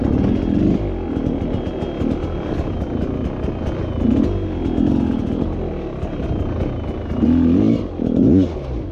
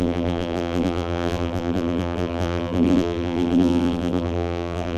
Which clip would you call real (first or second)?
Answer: first